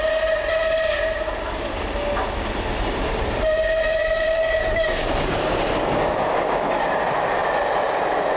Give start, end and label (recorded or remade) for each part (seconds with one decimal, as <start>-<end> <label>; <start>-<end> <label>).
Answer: 0.0-4.0 recorded; 4.0-7.0 remade; 7.0-8.4 recorded

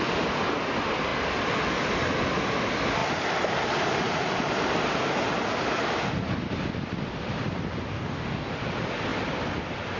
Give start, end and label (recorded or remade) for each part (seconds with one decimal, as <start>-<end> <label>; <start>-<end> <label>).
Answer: 0.0-7.9 recorded; 7.9-8.5 remade; 8.5-10.0 recorded

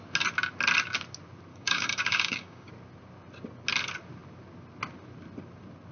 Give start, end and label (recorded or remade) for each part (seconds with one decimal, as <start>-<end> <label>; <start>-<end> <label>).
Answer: 0.0-1.5 recorded; 1.5-2.7 remade; 2.7-5.9 recorded